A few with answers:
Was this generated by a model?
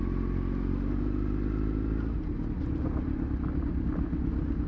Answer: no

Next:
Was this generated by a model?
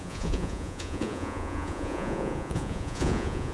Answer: yes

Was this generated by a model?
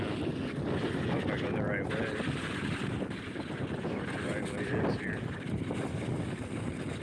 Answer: no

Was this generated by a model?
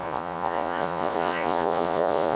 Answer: yes